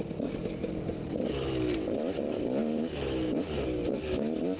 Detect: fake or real real